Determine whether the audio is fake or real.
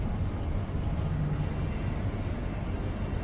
real